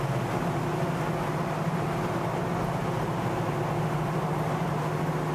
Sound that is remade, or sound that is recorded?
recorded